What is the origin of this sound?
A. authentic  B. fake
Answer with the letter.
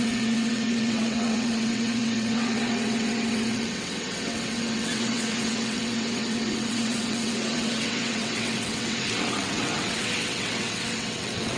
B